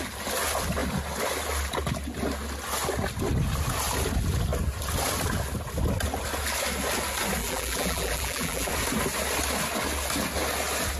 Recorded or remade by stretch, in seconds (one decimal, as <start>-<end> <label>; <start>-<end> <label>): 0.0-7.4 recorded; 7.4-8.7 remade; 8.7-11.0 recorded